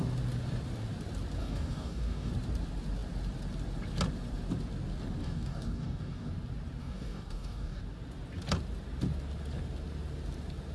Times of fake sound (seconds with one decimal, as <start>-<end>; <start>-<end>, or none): 1.4-2.3; 5.2-6.3; 6.8-7.8